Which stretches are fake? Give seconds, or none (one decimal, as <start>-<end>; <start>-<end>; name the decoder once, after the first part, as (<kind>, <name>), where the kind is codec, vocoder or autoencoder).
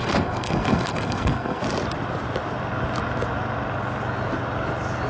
0.0-1.6 (codec, SNAC)